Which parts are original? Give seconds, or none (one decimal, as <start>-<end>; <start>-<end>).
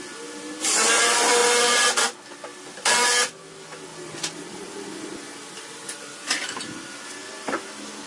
0.0-8.1